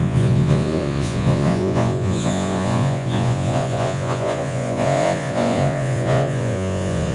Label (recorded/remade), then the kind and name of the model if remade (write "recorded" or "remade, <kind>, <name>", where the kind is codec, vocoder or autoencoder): remade, vocoder, Vocos